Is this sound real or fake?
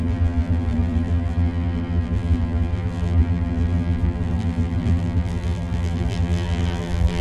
fake